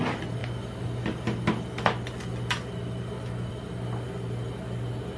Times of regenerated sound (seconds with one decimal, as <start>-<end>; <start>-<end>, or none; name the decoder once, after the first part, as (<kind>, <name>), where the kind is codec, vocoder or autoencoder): none